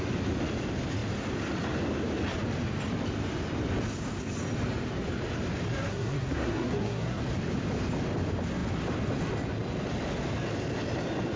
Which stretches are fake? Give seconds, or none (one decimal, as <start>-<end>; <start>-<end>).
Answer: 5.9-7.2